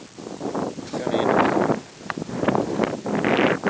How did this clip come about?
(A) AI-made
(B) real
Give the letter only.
B